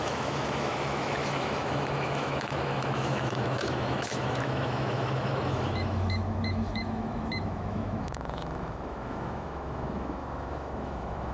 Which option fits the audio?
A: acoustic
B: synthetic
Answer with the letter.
B